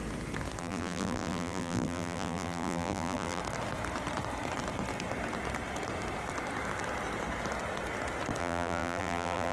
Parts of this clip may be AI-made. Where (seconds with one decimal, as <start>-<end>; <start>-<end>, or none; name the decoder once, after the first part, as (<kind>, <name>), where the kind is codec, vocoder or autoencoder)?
0.6-3.4 (vocoder, BigVGAN v2); 8.4-9.5